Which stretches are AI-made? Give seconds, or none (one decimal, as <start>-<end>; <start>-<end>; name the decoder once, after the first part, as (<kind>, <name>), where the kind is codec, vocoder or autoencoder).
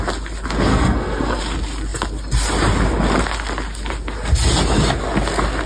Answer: 0.7-1.4 (codec, SNAC)